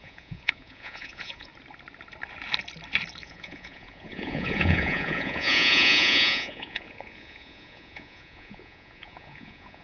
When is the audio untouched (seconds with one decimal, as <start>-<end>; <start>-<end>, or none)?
1.5-3.2